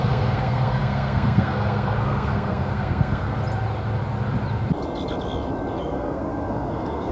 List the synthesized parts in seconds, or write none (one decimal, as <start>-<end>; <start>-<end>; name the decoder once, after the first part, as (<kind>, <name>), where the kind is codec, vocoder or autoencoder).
0.0-3.4 (codec, SNAC); 5.8-7.1